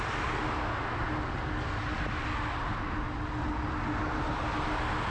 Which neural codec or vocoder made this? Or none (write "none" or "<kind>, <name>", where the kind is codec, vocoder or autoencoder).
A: none